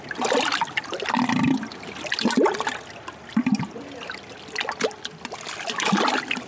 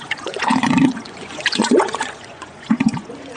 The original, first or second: first